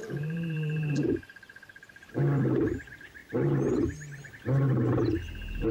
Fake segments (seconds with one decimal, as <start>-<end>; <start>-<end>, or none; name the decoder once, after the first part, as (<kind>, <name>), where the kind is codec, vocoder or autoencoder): 0.0-2.1 (vocoder, BigVGAN v2)